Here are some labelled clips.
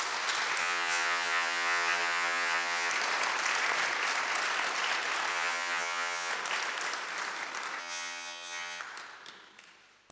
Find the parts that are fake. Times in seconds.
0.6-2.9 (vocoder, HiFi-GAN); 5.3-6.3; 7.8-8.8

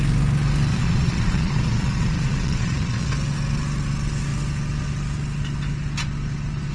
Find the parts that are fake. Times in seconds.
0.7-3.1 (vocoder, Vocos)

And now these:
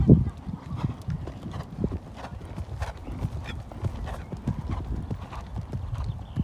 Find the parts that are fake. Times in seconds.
none

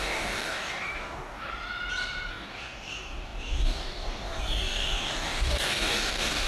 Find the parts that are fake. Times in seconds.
0.0-1.5 (codec, DAC); 2.3-6.5

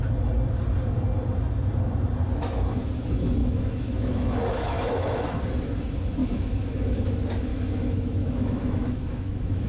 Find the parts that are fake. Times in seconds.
3.4-5.4 (autoencoder, DAC-VAE); 6.2-7.0; 7.5-9.7